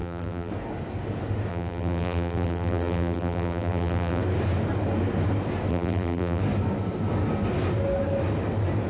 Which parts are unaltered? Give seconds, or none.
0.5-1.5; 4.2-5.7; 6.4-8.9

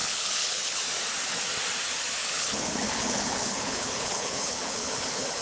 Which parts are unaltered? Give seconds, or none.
0.8-2.2